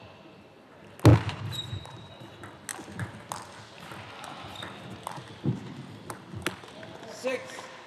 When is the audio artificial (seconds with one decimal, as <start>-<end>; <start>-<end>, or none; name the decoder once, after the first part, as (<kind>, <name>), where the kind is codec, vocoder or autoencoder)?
1.1-2.1 (vocoder, BigVGAN v2)